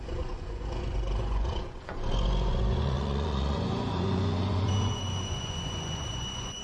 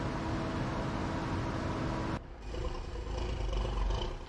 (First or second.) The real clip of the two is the second